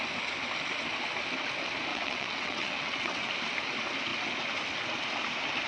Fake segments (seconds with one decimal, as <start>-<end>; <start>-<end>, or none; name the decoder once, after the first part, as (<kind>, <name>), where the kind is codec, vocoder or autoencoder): 1.9-3.3 (vocoder, WaveNeXt)